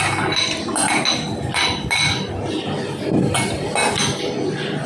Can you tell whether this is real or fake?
real